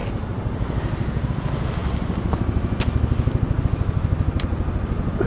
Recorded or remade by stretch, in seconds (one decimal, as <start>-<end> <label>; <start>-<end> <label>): 0.0-1.3 remade; 1.3-4.5 recorded; 4.5-5.3 remade